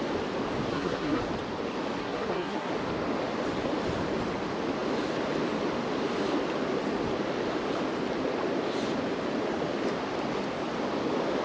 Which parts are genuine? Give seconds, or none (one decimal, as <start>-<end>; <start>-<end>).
0.0-0.7; 1.2-2.0; 2.7-11.4